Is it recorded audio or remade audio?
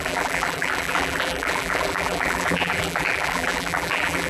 remade